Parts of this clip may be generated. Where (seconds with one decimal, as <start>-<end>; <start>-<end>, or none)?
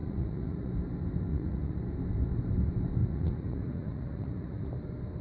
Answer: 0.0-0.7; 1.3-1.8; 3.0-4.7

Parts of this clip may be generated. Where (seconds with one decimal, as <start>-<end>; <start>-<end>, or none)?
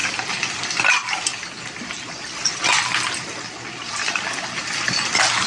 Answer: 0.0-0.7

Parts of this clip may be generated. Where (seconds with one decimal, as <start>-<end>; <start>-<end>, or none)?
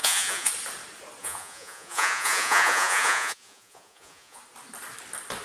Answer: 0.0-0.5; 1.2-4.4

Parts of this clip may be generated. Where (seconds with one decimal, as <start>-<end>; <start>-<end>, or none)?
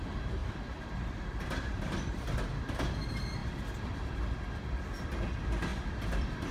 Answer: 0.4-2.0; 3.4-4.1; 5.7-6.5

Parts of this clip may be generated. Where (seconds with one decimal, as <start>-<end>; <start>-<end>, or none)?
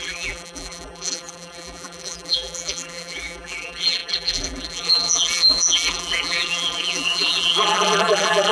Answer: 0.0-8.5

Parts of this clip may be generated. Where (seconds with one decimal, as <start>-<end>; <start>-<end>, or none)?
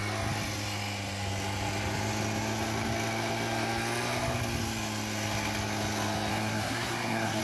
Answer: 6.3-7.4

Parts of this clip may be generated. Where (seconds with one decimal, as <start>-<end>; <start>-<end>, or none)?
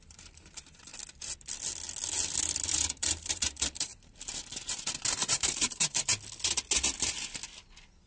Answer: 0.0-0.9; 3.0-3.9; 5.1-6.1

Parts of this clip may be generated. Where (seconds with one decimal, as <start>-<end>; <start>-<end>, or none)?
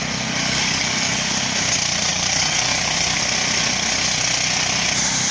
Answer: 0.4-1.4; 2.1-3.2